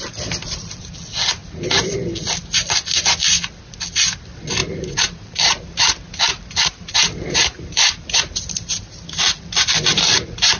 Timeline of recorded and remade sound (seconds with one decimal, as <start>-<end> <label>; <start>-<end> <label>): 0.0-0.4 recorded; 0.4-1.0 remade; 1.0-1.4 recorded; 1.4-2.1 remade; 2.1-4.6 recorded; 4.6-5.8 remade; 5.8-6.7 recorded; 6.7-9.2 remade; 9.2-10.6 recorded